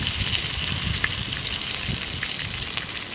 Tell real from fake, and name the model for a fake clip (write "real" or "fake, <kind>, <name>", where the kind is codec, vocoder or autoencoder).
real